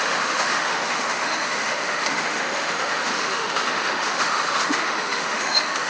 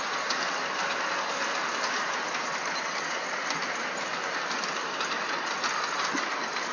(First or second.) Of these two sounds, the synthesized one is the first